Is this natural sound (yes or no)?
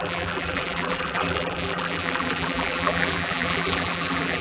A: no